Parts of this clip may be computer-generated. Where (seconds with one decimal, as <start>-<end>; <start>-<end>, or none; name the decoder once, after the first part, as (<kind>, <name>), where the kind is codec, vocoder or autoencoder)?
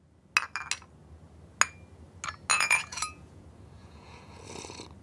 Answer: 2.5-3.4 (vocoder, Vocos); 3.8-4.4